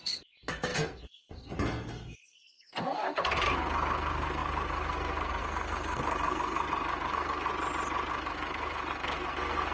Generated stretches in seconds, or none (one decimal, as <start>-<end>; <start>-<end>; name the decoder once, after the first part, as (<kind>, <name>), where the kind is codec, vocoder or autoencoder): 0.0-7.5 (codec, SNAC); 8.1-9.7